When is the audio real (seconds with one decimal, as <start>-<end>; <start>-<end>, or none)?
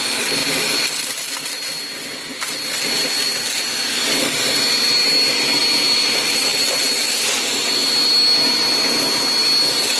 0.0-10.0